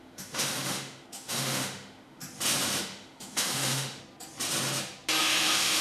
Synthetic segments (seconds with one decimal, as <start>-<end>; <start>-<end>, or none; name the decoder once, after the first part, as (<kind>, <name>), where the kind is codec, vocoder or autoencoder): 0.0-2.2 (autoencoder, DAC-VAE); 2.8-4.0; 5.2-5.8